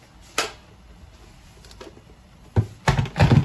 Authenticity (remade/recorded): recorded